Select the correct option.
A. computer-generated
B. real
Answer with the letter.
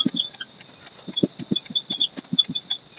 B